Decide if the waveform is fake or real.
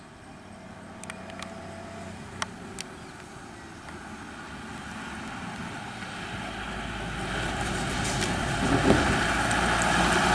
real